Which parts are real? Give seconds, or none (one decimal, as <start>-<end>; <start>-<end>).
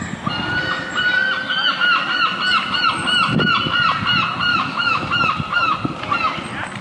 0.0-4.5; 5.1-6.8